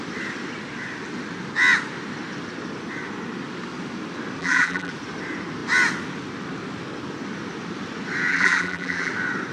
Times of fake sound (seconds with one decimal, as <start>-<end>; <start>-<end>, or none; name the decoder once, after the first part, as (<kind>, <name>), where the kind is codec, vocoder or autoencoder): 4.4-4.9 (vocoder, BigVGAN v2); 8.3-9.1